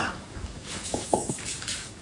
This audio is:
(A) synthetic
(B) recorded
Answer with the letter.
A